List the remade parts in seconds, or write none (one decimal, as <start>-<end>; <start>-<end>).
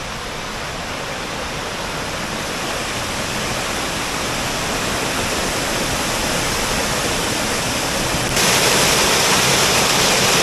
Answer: none